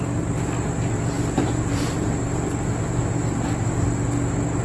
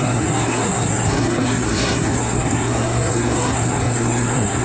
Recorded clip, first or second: first